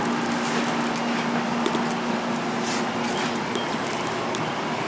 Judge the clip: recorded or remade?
recorded